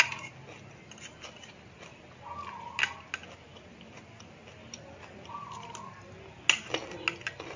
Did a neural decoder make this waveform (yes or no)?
no